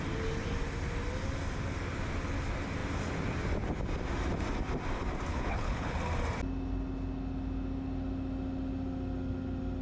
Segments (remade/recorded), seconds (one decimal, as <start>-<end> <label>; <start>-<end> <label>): 0.0-5.3 recorded; 5.3-6.0 remade; 6.0-9.8 recorded